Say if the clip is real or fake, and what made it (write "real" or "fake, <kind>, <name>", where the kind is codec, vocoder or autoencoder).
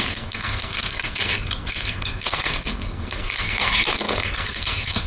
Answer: fake, codec, SNAC